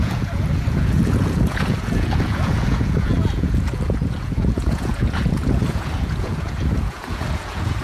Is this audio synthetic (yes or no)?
yes